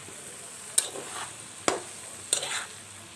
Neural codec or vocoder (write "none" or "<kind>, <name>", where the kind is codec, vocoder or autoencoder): none